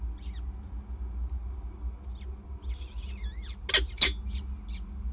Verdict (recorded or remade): recorded